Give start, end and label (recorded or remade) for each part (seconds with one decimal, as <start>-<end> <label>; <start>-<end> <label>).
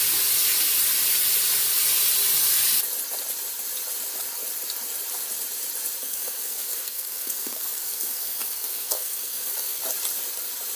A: 0.0-6.0 recorded; 6.0-9.8 remade; 9.8-10.8 recorded